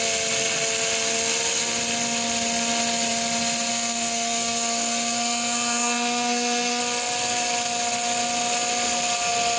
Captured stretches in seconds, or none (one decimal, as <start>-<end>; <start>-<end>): 0.0-3.7; 6.8-9.6